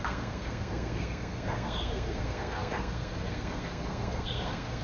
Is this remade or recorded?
remade